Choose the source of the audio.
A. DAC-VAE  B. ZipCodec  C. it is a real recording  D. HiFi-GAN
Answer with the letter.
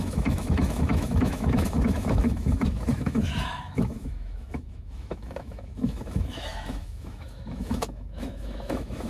A